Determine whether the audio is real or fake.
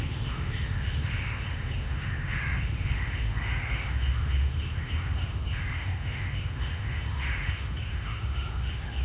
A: fake